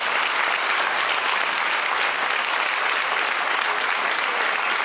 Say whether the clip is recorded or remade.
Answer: recorded